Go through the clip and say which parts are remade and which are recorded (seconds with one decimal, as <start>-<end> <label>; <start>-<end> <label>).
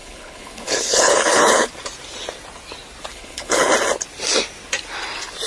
0.0-1.7 remade; 1.7-3.1 recorded; 3.1-3.7 remade; 3.7-5.5 recorded